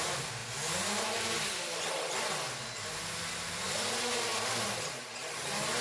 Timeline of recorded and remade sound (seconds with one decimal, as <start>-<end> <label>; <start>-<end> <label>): 0.0-5.8 recorded